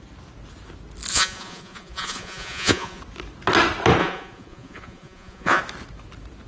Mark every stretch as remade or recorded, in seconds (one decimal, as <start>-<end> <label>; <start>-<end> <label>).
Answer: 0.0-1.1 recorded; 1.1-3.0 remade; 3.0-4.0 recorded; 4.0-5.6 remade; 5.6-6.5 recorded